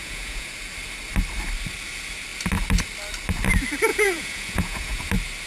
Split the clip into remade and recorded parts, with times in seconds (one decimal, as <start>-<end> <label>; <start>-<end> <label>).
0.0-0.5 remade; 0.5-3.9 recorded; 3.9-5.1 remade; 5.1-5.5 recorded